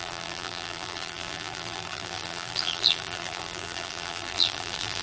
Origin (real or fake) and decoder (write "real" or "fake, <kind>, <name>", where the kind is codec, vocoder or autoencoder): fake, vocoder, BigVGAN v2